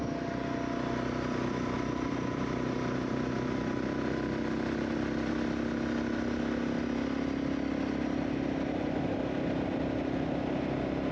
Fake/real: real